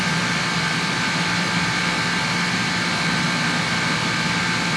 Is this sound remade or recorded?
recorded